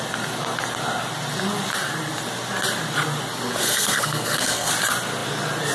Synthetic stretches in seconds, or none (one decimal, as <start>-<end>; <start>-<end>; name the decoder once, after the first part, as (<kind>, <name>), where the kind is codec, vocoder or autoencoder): 3.6-4.7 (codec, SNAC)

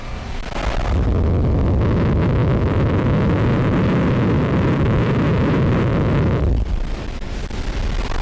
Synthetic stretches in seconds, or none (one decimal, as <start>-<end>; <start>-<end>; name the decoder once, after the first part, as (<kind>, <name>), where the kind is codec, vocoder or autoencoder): 2.4-7.1 (vocoder, BigVGAN v2)

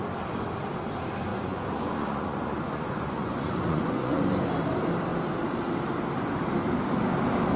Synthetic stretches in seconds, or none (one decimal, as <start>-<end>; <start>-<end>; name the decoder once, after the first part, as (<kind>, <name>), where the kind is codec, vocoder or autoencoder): 1.3-4.2 (vocoder, Vocos)

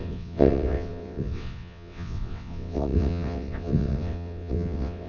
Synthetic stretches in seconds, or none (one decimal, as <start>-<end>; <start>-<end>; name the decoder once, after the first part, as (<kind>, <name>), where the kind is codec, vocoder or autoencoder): 0.0-5.1 (vocoder, WaveNeXt)